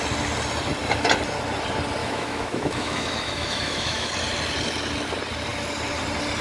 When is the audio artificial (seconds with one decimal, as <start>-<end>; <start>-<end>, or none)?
2.0-4.1